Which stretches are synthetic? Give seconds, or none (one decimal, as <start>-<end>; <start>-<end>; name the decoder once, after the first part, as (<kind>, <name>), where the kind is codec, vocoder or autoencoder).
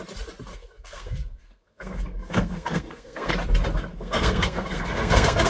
0.5-3.3 (codec, SNAC); 3.9-5.5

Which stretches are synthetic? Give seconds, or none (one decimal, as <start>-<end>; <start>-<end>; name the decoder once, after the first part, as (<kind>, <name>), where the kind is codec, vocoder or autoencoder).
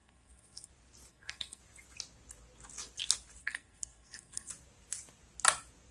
0.0-0.7 (codec, SNAC); 1.1-1.6; 3.4-4.5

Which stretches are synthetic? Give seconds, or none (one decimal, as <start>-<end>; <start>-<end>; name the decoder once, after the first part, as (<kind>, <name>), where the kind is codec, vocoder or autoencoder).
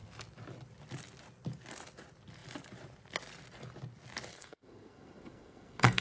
4.3-6.0 (codec, SNAC)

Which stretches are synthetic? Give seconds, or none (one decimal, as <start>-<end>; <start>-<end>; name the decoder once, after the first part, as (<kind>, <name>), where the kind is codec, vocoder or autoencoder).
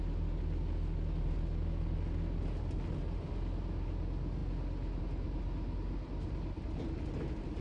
none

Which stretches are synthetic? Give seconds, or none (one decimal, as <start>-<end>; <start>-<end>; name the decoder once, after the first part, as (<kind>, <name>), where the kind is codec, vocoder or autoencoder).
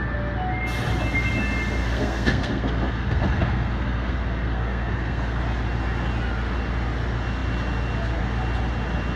1.8-5.4 (codec, SNAC)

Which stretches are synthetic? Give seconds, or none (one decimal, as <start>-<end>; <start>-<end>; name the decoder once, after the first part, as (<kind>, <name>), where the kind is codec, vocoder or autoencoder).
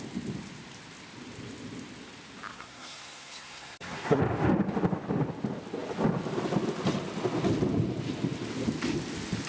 2.5-4.2 (codec, SNAC)